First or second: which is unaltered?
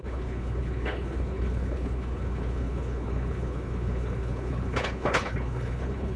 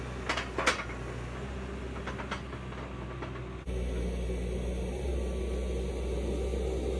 second